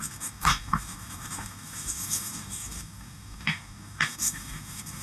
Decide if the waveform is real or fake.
fake